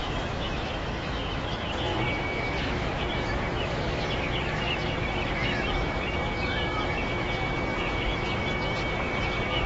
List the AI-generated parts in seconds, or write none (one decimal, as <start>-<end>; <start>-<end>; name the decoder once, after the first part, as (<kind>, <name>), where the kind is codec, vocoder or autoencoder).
0.0-9.7 (autoencoder, DAC-VAE)